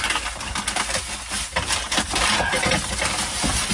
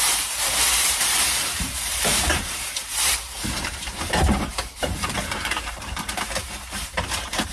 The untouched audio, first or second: first